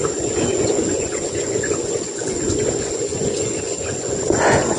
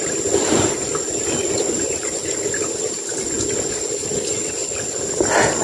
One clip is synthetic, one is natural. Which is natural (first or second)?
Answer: second